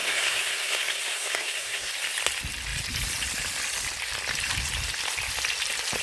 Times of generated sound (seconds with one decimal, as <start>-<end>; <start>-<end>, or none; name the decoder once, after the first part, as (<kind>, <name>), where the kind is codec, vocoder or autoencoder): 0.0-1.9 (codec, SNAC)